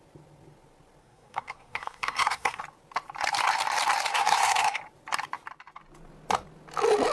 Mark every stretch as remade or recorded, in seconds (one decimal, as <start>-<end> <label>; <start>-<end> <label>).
0.0-1.0 recorded; 1.0-2.6 remade; 2.6-4.1 recorded; 4.1-4.8 remade; 4.8-7.1 recorded